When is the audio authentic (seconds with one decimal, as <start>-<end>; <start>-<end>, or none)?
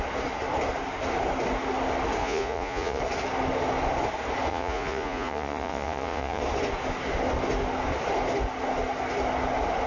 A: 0.0-2.2; 3.0-4.5; 6.4-9.9